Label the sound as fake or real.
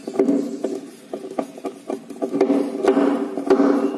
real